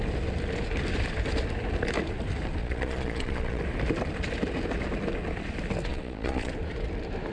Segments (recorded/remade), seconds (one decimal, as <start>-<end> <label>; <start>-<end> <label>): 0.0-2.6 recorded; 2.6-3.6 remade; 3.6-5.9 recorded; 5.9-6.5 remade; 6.5-7.3 recorded